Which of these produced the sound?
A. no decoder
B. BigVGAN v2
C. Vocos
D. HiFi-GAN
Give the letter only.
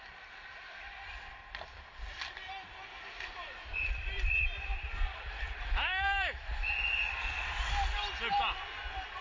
B